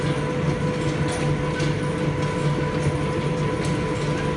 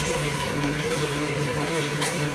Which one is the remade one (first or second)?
second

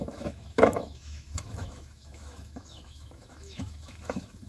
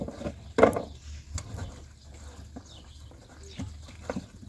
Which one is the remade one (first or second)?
first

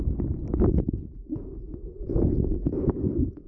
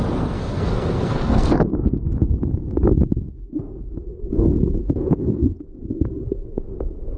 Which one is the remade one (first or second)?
second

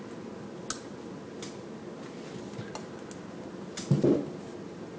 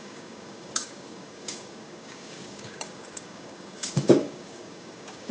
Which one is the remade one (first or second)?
second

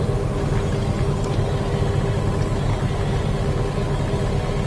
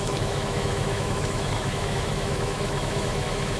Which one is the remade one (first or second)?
second